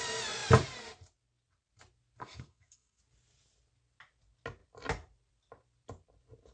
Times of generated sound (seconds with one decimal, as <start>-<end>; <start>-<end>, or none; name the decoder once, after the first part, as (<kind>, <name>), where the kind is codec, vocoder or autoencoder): 2.2-3.0 (codec, SNAC)